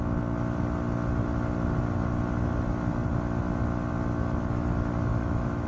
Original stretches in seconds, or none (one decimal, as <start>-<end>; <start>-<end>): 0.0-5.1